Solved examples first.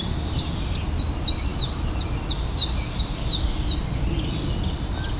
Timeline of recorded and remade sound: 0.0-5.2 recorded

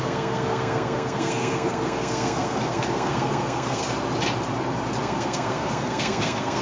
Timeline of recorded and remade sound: 0.0-3.8 remade; 3.8-5.0 recorded; 5.0-6.6 remade

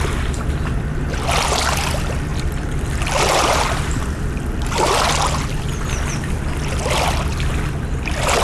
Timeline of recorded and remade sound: 0.0-8.4 recorded